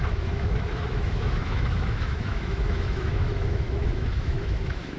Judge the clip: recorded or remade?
remade